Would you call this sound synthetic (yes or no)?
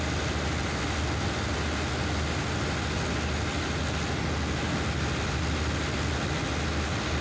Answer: no